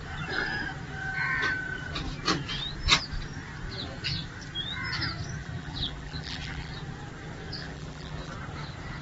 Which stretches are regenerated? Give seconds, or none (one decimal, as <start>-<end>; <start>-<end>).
5.4-6.7; 7.6-8.3